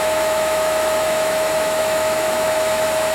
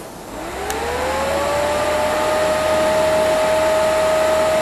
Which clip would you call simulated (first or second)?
first